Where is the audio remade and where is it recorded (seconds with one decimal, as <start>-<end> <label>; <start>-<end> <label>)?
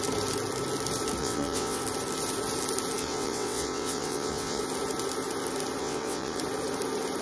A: 0.0-1.2 recorded; 1.2-1.8 remade; 1.8-3.0 recorded; 3.0-4.6 remade; 4.6-5.8 recorded; 5.8-6.4 remade; 6.4-7.2 recorded